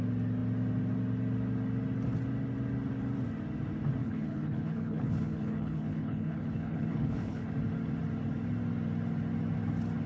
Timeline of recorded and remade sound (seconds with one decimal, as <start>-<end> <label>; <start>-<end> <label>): 0.0-4.0 recorded; 4.0-7.5 remade; 7.5-10.1 recorded

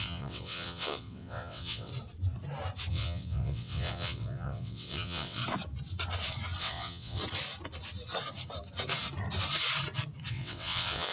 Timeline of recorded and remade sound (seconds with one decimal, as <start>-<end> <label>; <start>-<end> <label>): 0.0-1.9 remade; 1.9-2.9 recorded; 2.9-5.4 remade; 5.4-6.6 recorded; 6.6-7.2 remade; 7.2-10.3 recorded; 10.3-11.1 remade

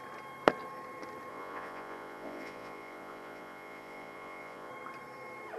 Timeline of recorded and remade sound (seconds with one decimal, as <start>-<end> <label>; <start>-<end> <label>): 0.0-1.3 recorded; 1.3-4.7 remade; 4.7-5.6 recorded

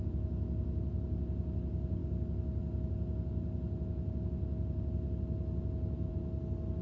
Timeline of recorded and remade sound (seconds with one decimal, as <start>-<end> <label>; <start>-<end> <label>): 0.0-6.8 recorded